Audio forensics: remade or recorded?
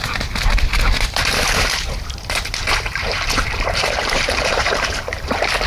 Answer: remade